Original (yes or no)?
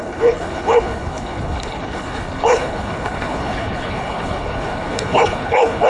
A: no